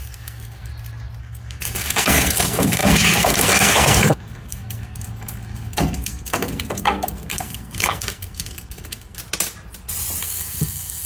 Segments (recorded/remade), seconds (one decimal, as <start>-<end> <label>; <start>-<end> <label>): 0.0-0.7 remade; 0.7-1.2 recorded; 1.2-9.2 remade; 9.2-10.2 recorded; 10.2-11.1 remade